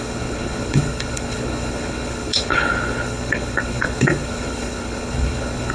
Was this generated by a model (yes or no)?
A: yes